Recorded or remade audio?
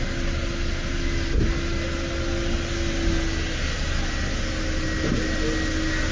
recorded